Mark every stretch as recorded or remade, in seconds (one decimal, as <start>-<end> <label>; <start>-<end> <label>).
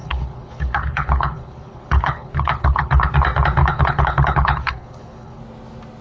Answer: 0.0-3.1 remade; 3.1-3.6 recorded; 3.6-5.4 remade; 5.4-6.0 recorded